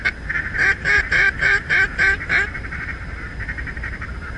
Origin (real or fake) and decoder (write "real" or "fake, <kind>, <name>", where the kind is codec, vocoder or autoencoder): fake, vocoder, BigVGAN v2